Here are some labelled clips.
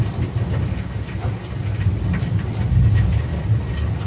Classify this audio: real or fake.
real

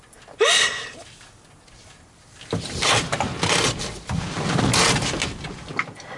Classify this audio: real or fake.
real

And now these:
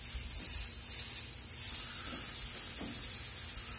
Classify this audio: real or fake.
real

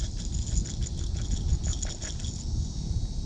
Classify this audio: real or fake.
real